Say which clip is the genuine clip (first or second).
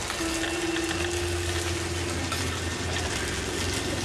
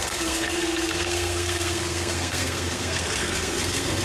first